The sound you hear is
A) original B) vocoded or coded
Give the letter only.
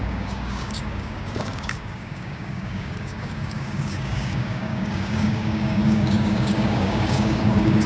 B